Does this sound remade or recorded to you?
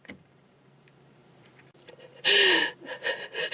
remade